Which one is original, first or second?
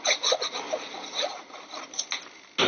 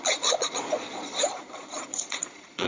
first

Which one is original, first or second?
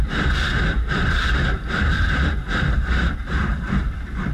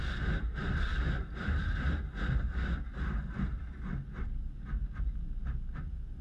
second